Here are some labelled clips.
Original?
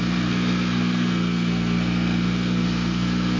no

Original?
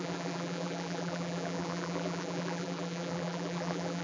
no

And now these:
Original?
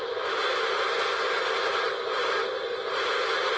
yes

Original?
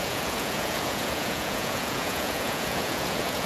no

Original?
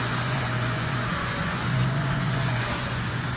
no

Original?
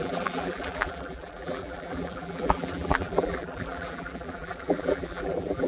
no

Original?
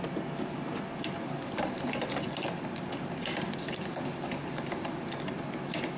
yes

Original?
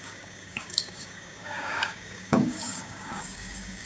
no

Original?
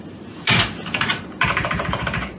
no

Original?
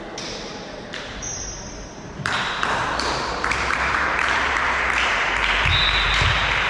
no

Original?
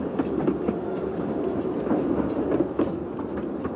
yes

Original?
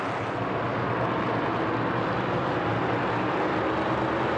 yes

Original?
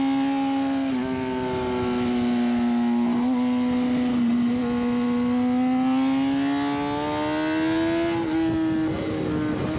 yes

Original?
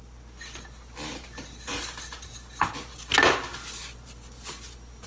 yes